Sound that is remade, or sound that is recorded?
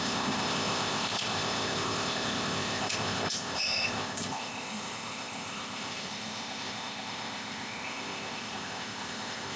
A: remade